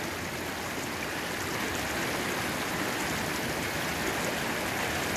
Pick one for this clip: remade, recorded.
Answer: recorded